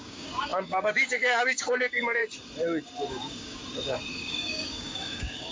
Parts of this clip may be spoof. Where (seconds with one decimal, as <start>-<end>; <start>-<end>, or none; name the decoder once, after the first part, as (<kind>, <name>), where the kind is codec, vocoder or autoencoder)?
0.0-2.2 (codec, DAC); 3.1-3.6; 4.2-5.5